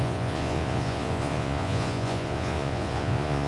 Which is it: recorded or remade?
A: remade